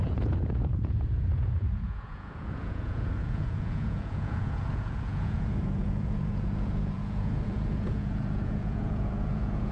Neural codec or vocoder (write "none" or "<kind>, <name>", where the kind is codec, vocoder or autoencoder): vocoder, Vocos